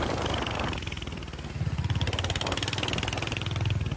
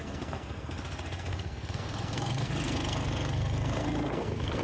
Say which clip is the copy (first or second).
second